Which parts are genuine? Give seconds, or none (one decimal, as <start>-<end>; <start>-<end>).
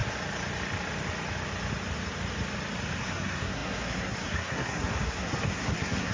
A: 0.0-3.0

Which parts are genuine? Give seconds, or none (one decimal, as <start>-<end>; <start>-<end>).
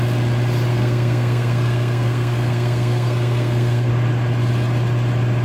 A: 0.0-0.7; 3.9-5.4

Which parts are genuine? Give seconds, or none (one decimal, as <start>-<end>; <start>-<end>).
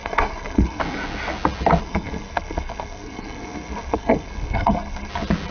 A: 0.8-1.8; 5.1-5.5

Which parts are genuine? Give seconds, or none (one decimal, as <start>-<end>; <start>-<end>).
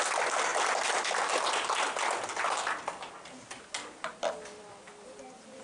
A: 0.0-5.6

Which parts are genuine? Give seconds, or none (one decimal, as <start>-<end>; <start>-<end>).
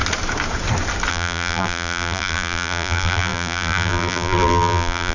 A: 0.0-1.1